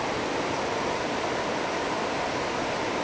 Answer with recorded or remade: recorded